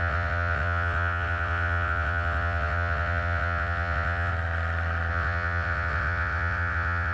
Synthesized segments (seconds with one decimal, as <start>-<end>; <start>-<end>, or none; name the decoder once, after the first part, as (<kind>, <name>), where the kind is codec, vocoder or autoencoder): 0.0-4.3 (vocoder, WaveNeXt); 5.1-7.1